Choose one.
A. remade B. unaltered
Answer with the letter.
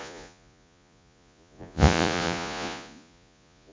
A